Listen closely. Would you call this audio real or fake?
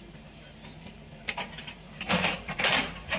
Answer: fake